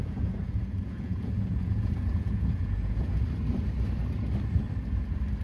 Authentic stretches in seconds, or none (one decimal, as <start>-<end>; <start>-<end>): 3.2-5.4